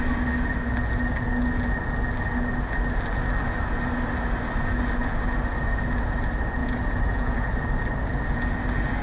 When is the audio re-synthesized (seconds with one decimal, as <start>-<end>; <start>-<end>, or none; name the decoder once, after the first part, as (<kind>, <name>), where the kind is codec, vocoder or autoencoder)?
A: 6.6-7.5 (vocoder, Vocos)